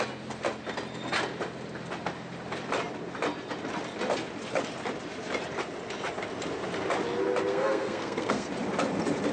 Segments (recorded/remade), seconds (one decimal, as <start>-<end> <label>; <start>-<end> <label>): 0.0-7.5 recorded; 7.5-8.5 remade; 8.5-9.3 recorded

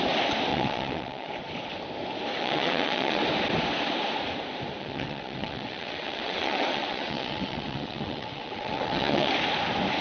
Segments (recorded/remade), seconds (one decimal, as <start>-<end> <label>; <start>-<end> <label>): 0.0-0.5 recorded; 0.5-1.3 remade; 1.3-2.4 recorded; 2.4-3.2 remade; 3.2-4.8 recorded; 4.8-9.3 remade; 9.3-10.0 recorded